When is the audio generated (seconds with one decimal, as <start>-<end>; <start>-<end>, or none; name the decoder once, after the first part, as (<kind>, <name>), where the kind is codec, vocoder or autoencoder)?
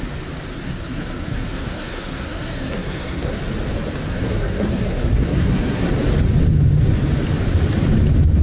0.5-3.4 (codec, SNAC); 4.1-5.9